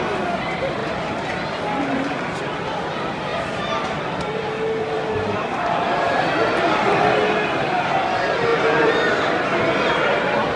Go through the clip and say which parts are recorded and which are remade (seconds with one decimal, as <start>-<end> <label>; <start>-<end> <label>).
0.0-0.8 recorded; 0.8-1.8 remade; 1.8-3.3 recorded; 3.3-4.2 remade; 4.2-4.8 recorded; 4.8-7.0 remade; 7.0-8.5 recorded; 8.5-9.3 remade; 9.3-10.6 recorded